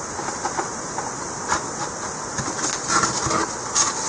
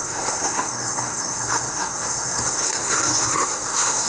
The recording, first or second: first